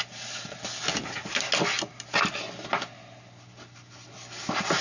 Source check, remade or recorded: recorded